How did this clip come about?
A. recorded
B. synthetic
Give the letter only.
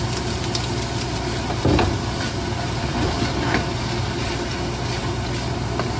A